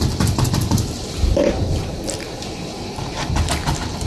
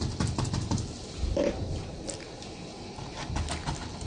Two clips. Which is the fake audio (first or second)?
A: first